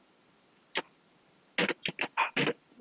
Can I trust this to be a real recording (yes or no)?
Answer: yes